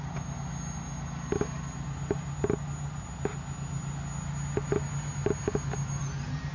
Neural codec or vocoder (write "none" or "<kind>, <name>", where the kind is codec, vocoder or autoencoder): none